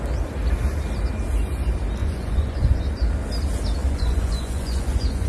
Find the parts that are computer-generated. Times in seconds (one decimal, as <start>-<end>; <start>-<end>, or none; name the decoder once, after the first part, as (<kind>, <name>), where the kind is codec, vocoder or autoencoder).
2.0-2.8 (vocoder, Vocos); 3.8-5.3

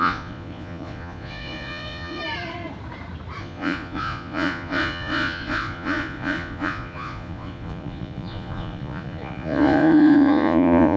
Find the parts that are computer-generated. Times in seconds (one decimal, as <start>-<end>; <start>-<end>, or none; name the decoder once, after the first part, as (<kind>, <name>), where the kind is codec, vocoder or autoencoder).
0.0-2.2 (vocoder, Vocos); 3.4-11.0

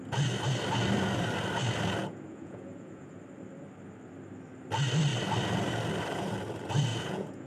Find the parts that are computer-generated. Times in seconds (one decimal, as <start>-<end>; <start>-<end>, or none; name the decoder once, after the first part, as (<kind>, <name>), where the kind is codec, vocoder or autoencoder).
2.0-3.2 (vocoder, Vocos); 6.9-7.5

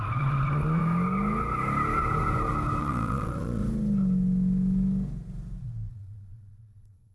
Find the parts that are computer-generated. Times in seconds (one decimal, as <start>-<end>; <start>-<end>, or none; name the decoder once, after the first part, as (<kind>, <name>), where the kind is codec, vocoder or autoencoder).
0.0-0.8 (vocoder, Vocos); 2.8-3.6; 5.9-7.1